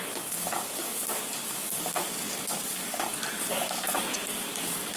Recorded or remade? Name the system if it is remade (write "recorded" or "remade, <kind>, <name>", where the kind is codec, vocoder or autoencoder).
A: remade, codec, DAC